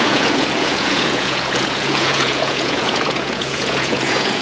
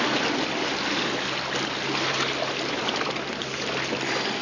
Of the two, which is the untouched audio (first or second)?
second